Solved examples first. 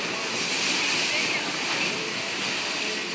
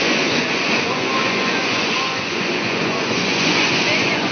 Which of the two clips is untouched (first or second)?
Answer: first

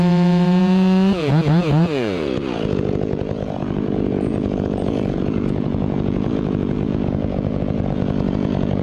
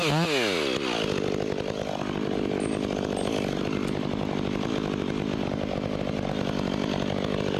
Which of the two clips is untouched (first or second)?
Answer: second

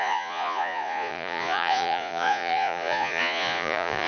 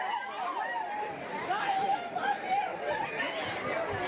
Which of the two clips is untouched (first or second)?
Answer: second